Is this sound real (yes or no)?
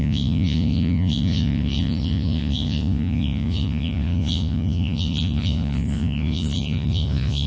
no